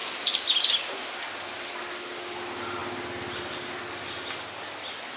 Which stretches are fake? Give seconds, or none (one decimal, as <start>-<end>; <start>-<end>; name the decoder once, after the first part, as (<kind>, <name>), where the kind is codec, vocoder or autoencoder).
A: none